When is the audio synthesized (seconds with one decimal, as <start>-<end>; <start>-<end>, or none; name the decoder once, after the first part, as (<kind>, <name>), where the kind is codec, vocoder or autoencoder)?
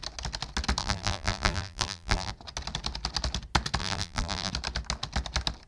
0.8-2.3 (vocoder, BigVGAN v2); 3.8-4.5